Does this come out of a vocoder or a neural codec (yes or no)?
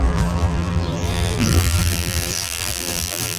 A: yes